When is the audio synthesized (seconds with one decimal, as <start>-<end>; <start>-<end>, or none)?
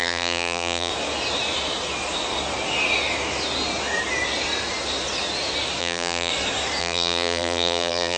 0.0-0.9; 5.8-6.3; 6.8-8.2